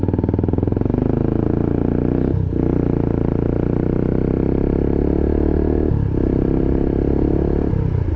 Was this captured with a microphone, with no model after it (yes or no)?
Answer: yes